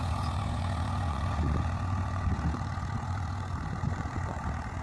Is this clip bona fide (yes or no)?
no